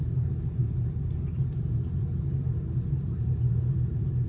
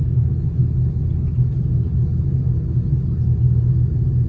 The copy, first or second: first